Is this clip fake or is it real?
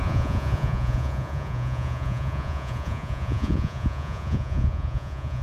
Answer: fake